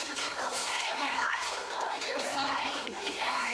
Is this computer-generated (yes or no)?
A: yes